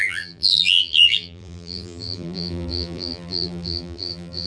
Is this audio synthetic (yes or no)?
yes